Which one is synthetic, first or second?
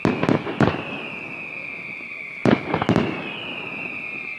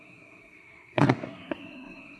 second